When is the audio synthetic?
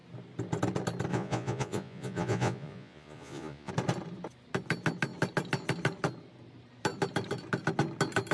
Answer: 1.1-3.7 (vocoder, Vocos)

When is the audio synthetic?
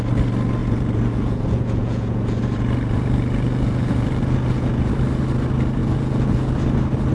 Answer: 0.6-4.9 (vocoder, Vocos); 5.8-6.5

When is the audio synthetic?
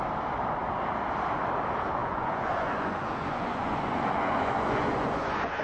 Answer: 2.0-5.6 (vocoder, Vocos)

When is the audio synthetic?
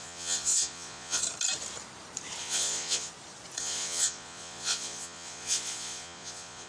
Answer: 0.0-1.2 (vocoder, Vocos); 2.4-3.1; 3.6-6.7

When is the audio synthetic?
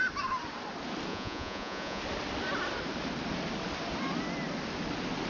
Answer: 1.1-2.0 (vocoder, Vocos)